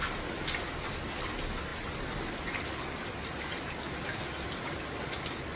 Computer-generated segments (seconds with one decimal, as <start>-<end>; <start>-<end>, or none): none